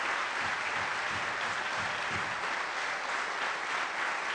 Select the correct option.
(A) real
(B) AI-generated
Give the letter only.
A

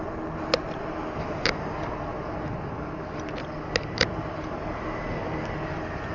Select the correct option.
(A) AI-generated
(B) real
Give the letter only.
B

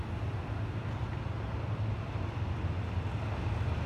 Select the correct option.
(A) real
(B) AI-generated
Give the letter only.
A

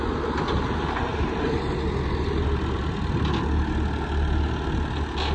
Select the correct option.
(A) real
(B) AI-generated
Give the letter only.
A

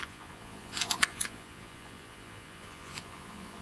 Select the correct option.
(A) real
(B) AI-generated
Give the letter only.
B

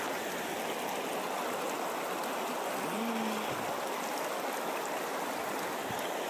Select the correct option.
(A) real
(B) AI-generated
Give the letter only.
A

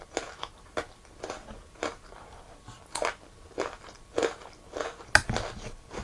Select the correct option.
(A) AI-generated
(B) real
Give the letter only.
B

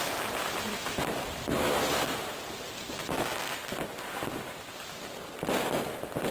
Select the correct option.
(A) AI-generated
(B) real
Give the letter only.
B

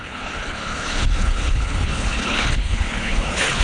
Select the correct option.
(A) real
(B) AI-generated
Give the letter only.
B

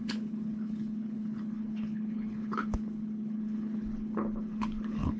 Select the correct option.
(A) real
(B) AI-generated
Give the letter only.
B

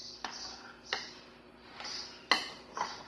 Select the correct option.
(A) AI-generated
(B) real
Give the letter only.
B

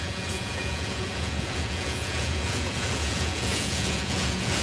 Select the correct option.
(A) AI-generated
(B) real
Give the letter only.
A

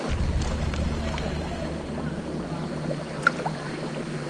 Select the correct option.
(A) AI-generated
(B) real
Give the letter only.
B